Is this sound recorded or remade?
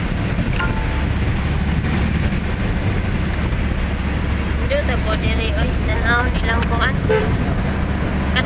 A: recorded